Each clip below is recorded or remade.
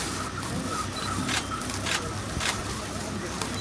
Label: remade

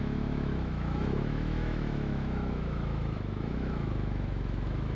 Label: remade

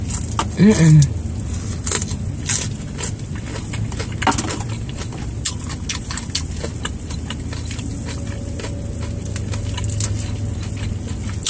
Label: recorded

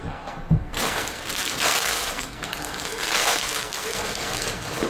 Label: remade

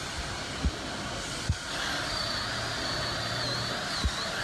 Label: recorded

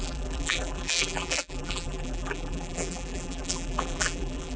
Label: remade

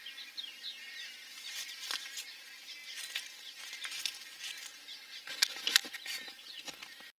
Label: recorded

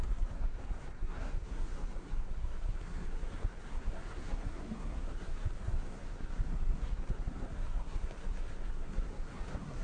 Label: remade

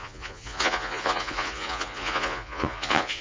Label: remade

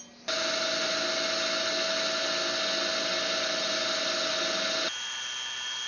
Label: recorded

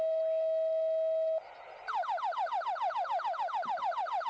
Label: recorded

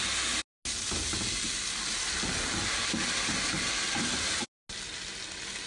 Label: recorded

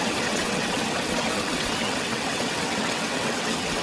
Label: remade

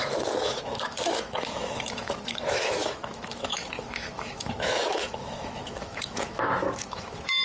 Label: remade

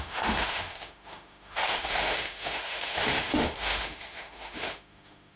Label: remade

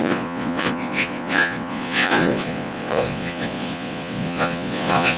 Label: remade